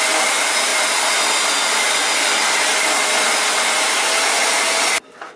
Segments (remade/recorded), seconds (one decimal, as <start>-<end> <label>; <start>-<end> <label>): 0.0-5.4 recorded

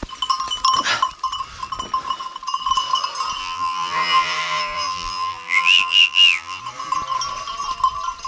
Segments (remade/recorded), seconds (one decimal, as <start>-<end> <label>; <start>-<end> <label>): 0.0-3.4 recorded; 3.4-6.6 remade; 6.6-8.3 recorded